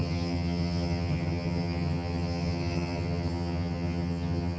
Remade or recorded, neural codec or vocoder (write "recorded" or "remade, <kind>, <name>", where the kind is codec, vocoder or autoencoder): remade, vocoder, HiFi-GAN